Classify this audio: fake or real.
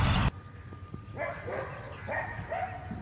real